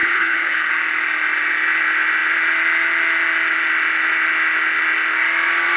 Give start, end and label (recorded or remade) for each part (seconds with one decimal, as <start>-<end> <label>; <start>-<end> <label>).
0.0-0.7 remade; 0.7-5.8 recorded